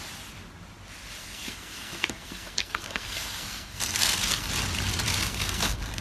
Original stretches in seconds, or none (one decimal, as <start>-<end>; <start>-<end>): 0.0-1.2; 4.5-5.1